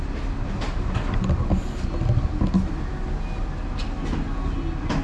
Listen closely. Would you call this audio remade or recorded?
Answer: recorded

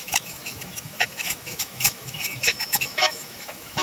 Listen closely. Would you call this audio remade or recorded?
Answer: remade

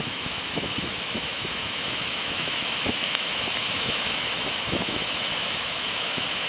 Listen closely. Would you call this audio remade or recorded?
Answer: remade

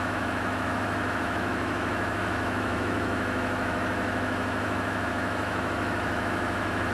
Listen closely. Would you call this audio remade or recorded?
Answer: remade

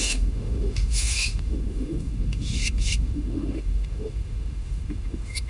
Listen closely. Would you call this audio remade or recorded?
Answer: remade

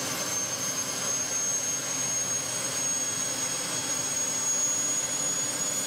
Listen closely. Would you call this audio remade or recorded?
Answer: recorded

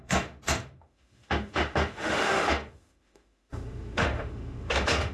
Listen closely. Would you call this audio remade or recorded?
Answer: remade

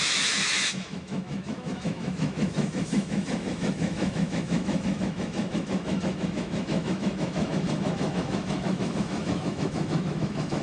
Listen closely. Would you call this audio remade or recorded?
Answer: remade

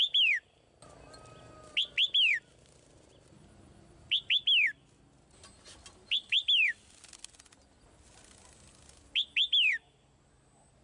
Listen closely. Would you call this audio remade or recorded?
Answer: recorded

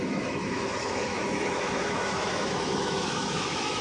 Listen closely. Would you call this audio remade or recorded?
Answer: remade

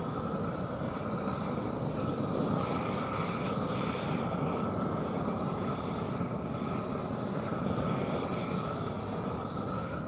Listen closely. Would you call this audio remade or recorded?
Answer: recorded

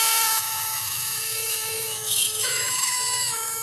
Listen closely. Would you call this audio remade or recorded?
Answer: remade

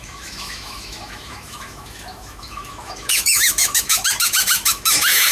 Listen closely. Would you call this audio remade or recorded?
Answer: remade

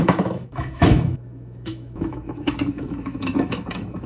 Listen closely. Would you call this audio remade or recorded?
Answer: remade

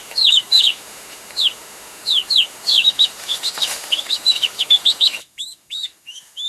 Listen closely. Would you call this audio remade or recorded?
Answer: remade